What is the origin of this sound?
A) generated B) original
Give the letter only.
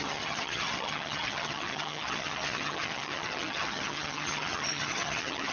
A